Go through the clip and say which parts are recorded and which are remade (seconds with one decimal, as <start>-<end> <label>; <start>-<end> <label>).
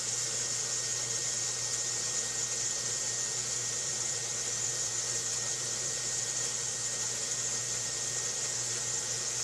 0.0-3.6 recorded; 3.6-7.2 remade; 7.2-9.4 recorded